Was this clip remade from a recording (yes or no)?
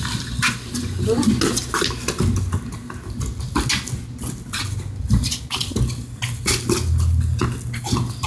no